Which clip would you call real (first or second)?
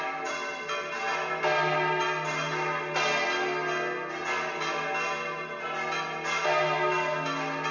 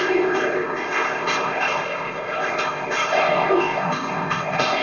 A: first